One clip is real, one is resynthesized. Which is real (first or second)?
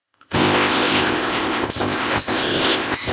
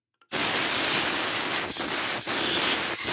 second